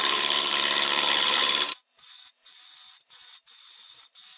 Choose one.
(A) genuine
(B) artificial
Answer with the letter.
B